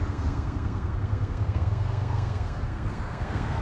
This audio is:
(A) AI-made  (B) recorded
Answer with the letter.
A